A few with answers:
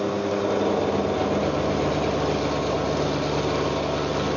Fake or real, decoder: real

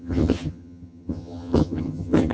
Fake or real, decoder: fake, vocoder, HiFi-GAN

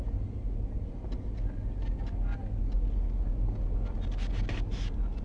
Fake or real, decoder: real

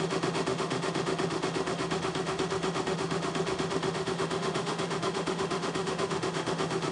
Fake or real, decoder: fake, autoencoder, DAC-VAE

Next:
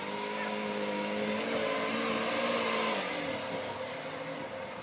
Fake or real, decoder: real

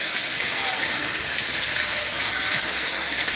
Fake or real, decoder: fake, codec, SNAC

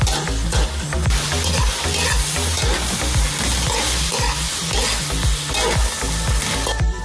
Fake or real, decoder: real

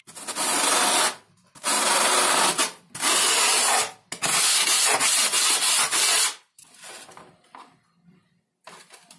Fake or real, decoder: real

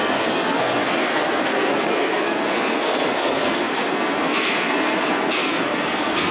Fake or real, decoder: fake, codec, SNAC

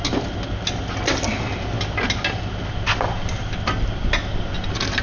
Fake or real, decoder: real